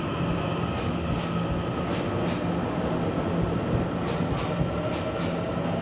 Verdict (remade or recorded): recorded